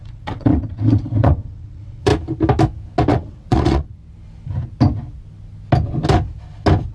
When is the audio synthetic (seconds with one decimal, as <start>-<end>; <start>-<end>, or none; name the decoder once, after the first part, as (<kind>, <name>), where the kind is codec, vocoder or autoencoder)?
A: 0.0-2.1 (vocoder, WaveNeXt); 3.1-4.0